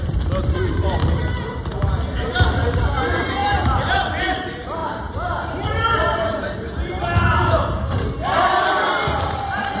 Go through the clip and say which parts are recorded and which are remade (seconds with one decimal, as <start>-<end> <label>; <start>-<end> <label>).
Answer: 0.0-1.0 remade; 1.0-2.2 recorded; 2.2-9.8 remade